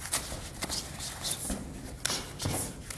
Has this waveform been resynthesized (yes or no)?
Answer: no